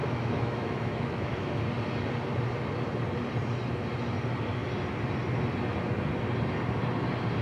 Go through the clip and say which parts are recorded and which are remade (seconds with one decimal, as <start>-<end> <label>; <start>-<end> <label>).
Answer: 0.0-1.6 remade; 1.6-7.4 recorded